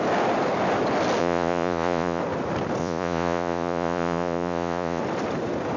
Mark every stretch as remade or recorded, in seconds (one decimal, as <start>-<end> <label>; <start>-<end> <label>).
0.0-1.2 recorded; 1.2-2.2 remade; 2.2-2.8 recorded; 2.8-5.0 remade; 5.0-5.8 recorded